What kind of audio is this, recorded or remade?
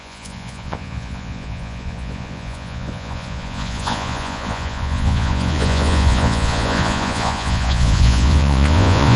remade